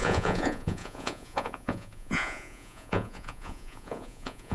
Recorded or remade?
remade